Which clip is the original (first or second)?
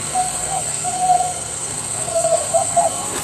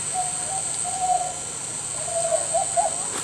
second